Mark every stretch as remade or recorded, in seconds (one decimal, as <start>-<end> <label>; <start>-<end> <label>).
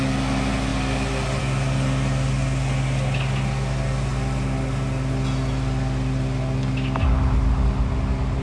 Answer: 0.0-8.4 recorded